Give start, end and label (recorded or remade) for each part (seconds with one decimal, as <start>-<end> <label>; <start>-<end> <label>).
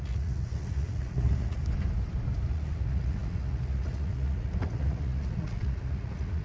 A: 0.0-1.6 remade; 1.6-2.5 recorded; 2.5-6.4 remade